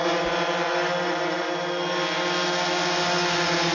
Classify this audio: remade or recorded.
recorded